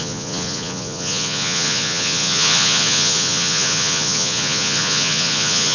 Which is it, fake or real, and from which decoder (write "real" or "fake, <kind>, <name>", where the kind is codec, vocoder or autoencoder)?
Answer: fake, vocoder, Vocos